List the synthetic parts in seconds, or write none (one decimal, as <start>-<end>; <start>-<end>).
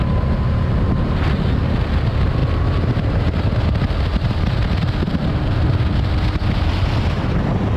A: none